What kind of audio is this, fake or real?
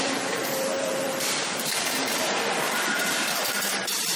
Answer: fake